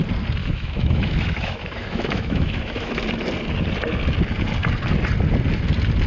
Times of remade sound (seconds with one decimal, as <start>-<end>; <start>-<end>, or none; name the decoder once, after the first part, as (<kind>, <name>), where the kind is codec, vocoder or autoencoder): 0.4-2.9 (autoencoder, DAC-VAE)